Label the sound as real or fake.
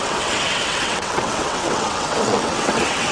fake